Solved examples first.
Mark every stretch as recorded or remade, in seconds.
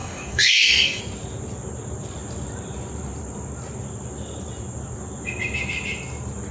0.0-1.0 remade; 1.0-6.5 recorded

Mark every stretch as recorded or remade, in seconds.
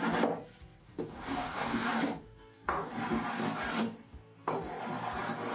0.0-0.8 recorded; 0.8-2.9 remade; 2.9-3.8 recorded; 3.8-4.5 remade; 4.5-5.5 recorded